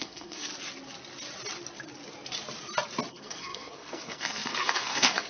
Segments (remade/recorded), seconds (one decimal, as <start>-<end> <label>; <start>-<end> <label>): 0.0-0.5 remade; 0.5-3.1 recorded; 3.1-5.3 remade